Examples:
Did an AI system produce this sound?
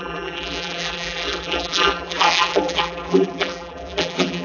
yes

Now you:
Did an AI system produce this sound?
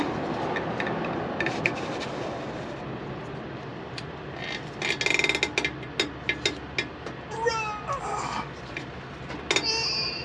no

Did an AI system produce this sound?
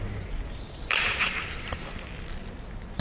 yes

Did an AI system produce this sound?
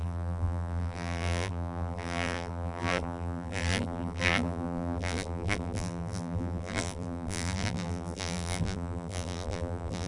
yes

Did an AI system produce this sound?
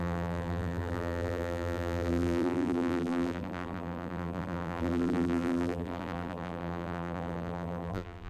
yes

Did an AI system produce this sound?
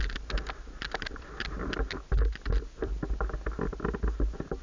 no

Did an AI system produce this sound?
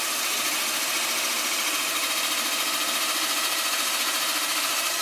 no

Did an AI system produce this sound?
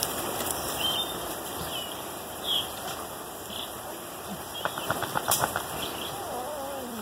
yes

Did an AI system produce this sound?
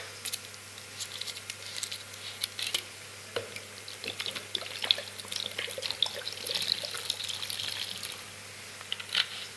no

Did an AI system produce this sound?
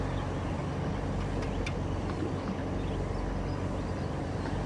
no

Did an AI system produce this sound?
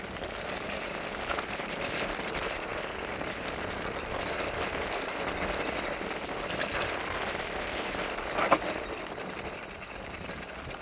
no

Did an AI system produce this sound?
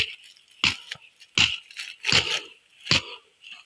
no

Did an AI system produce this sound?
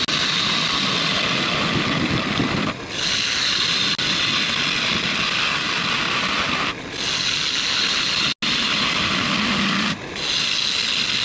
no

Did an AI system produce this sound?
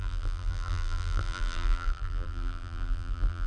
yes